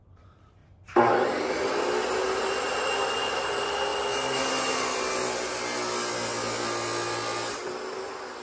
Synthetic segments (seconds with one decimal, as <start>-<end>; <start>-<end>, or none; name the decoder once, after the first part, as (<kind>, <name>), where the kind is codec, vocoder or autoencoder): none